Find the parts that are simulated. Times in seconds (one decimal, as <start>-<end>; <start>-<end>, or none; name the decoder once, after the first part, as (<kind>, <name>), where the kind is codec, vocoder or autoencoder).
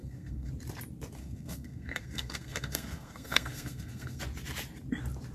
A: 0.0-0.5 (codec, SNAC); 1.2-4.2